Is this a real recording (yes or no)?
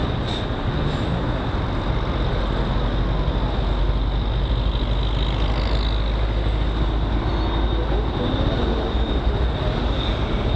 yes